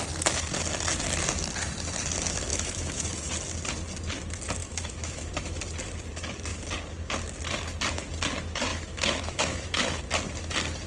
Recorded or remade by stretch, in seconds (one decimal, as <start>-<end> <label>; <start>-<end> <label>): 0.0-2.5 recorded; 2.5-3.3 remade; 3.3-4.6 recorded; 4.6-5.6 remade; 5.6-8.7 recorded; 8.7-10.0 remade; 10.0-10.9 recorded